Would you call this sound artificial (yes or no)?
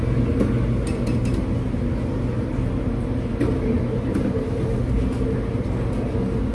no